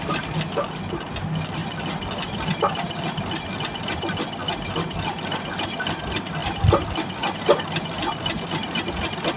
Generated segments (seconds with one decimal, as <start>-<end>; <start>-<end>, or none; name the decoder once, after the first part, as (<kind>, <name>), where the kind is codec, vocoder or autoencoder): 1.6-2.5 (vocoder, BigVGAN v2); 6.4-7.4